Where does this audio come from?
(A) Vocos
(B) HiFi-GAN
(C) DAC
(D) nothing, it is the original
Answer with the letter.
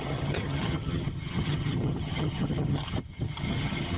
B